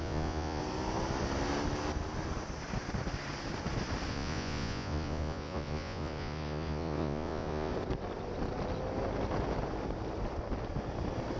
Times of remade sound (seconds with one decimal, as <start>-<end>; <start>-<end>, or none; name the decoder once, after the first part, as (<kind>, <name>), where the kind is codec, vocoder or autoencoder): 0.0-0.6 (vocoder, Vocos); 4.1-7.7